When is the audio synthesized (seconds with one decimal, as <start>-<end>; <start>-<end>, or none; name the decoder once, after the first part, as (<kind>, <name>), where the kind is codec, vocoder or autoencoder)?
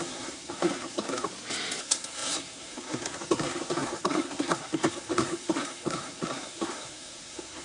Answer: 0.0-1.3 (codec, SNAC); 1.8-7.6